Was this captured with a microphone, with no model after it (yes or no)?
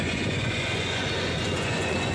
no